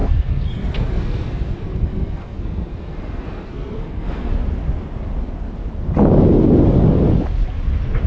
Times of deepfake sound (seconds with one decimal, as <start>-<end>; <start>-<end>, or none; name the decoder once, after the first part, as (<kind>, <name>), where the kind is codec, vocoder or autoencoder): 0.0-4.3 (codec, SNAC)